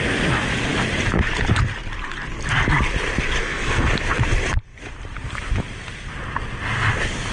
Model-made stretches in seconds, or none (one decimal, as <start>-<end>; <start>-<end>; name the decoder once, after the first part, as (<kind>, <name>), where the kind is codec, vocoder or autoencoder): 3.4-3.9 (codec, SNAC)